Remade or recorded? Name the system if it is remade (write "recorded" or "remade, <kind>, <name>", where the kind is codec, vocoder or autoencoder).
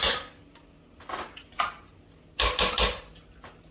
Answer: recorded